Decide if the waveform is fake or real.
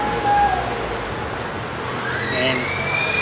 real